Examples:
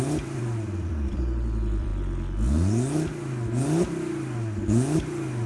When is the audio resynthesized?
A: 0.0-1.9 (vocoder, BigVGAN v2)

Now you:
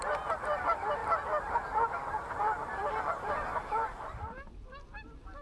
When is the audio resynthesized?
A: 3.5-4.2 (vocoder, BigVGAN v2)